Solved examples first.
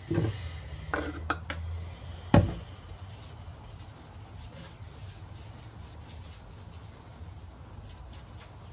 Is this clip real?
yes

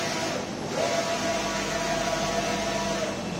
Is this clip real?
yes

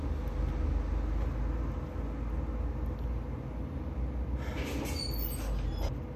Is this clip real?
yes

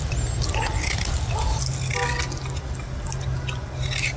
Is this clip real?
yes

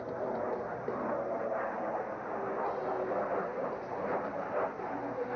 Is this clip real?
yes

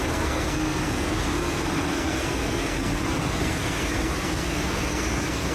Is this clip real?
no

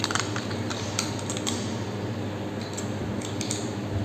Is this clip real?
yes